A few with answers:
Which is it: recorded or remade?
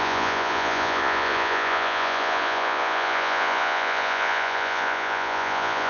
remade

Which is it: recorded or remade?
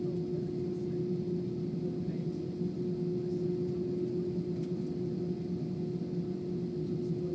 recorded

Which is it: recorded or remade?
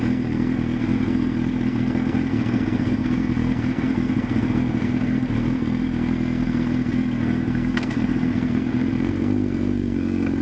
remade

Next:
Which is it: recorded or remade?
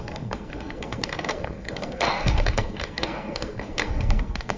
remade